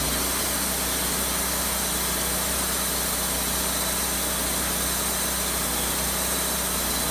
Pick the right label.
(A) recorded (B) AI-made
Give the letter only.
A